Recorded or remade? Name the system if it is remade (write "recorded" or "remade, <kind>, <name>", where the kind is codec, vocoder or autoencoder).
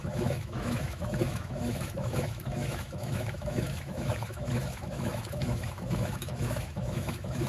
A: remade, autoencoder, DAC-VAE